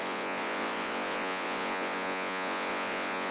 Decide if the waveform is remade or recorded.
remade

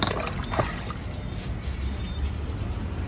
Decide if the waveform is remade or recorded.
recorded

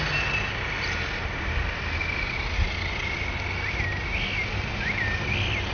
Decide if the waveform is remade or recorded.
recorded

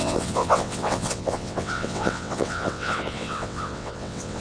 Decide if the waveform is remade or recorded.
remade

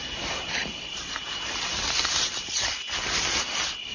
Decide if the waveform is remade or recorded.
recorded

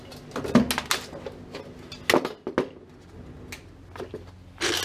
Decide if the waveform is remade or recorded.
recorded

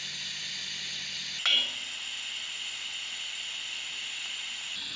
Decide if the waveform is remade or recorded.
recorded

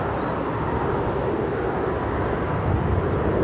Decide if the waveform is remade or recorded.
recorded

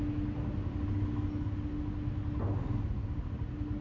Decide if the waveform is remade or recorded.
recorded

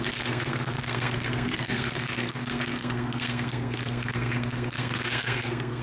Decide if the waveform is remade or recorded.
remade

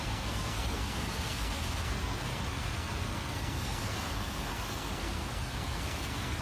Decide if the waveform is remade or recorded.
remade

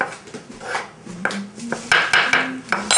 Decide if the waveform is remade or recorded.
recorded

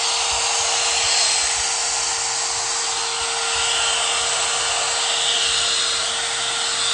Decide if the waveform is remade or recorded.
recorded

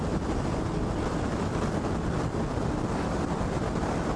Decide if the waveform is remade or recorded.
recorded